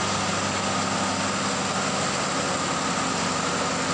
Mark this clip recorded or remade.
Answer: recorded